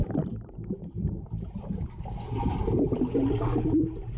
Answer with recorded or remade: recorded